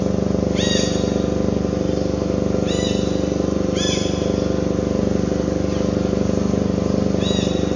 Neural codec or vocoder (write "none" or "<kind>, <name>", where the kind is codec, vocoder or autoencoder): none